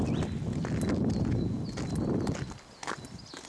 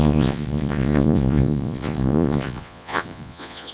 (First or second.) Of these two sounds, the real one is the first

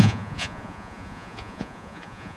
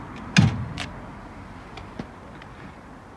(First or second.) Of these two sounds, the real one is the second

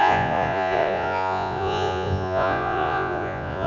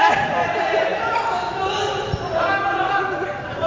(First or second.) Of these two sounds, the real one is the second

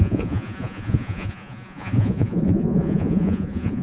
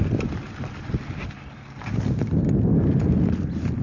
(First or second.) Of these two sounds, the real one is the second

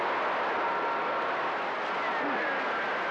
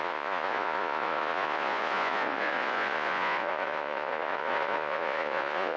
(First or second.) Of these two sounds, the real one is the first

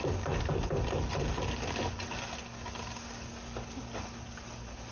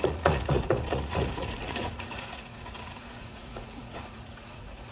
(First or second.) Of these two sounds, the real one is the first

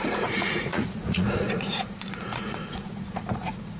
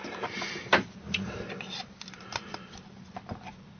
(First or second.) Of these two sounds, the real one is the second